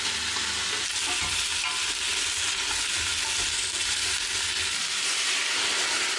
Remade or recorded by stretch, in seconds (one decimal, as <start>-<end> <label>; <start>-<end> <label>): 0.0-6.2 recorded